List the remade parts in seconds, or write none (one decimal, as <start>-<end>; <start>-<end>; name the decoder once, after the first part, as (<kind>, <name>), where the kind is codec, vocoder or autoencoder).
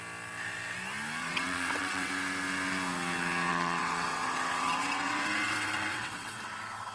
1.2-2.1 (vocoder, WaveNeXt); 3.5-6.5